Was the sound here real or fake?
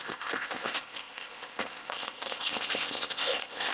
fake